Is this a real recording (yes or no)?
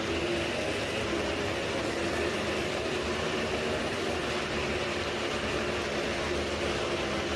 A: yes